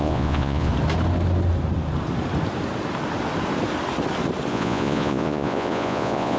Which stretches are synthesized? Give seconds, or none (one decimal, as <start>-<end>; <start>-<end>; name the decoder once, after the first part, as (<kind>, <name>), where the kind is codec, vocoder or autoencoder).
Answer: 0.0-0.7 (vocoder, Vocos); 4.5-6.4